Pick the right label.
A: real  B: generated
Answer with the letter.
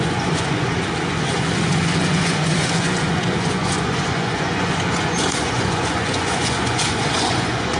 B